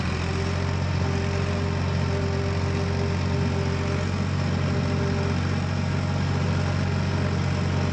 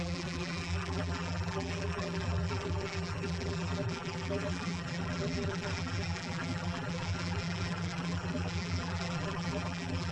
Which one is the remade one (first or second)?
second